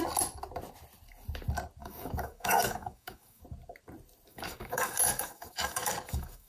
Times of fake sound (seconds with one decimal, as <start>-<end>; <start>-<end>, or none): 1.8-3.4; 4.3-6.5